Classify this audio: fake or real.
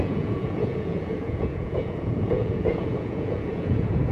fake